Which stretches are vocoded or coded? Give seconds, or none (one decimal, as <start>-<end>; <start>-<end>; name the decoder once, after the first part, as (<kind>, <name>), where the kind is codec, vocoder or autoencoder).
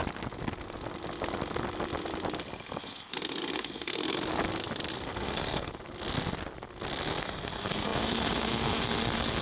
2.8-4.3 (codec, SNAC); 4.9-5.7; 7.2-9.4